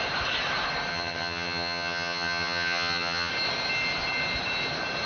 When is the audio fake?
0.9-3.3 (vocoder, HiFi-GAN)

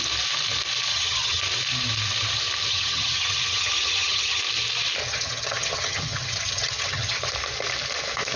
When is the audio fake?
0.9-1.4 (vocoder, HiFi-GAN); 2.7-4.4; 5.0-7.3

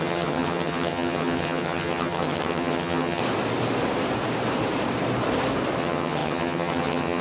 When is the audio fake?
0.0-3.2 (vocoder, HiFi-GAN); 5.8-7.2

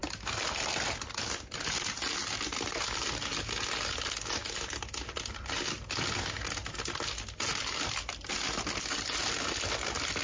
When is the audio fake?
none

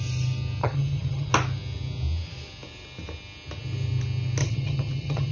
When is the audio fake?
0.6-1.3 (vocoder, HiFi-GAN); 4.4-5.3

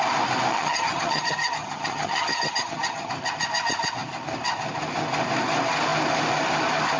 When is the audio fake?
0.5-3.1 (vocoder, HiFi-GAN)

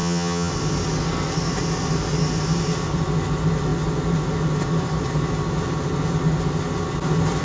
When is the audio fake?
0.0-0.5 (vocoder, HiFi-GAN)